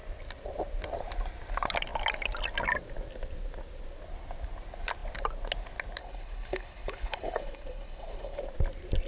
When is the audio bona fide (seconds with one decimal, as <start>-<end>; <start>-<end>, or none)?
0.0-6.0; 8.4-9.1